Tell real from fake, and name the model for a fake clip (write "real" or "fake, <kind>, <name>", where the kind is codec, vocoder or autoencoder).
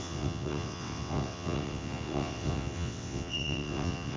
fake, vocoder, WaveNeXt